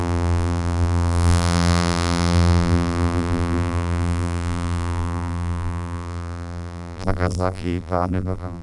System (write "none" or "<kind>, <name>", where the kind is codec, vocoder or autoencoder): vocoder, BigVGAN v2